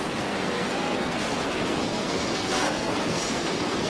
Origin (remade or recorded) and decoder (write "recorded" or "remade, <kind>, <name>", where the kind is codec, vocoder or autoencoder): remade, codec, SNAC